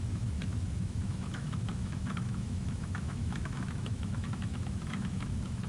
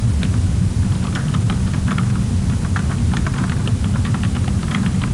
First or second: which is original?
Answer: second